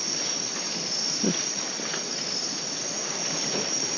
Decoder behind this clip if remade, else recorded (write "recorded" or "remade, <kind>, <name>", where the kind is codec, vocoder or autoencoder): recorded